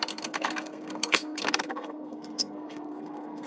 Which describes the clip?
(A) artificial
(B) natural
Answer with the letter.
A